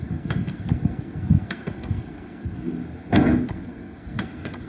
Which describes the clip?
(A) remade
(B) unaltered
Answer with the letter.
A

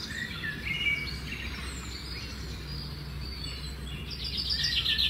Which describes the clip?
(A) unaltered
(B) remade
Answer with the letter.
A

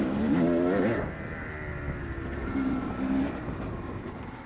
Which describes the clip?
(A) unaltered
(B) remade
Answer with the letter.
A